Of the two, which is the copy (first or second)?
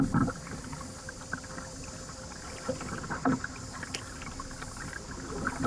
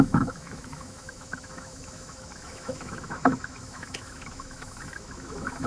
second